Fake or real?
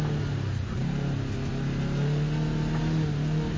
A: real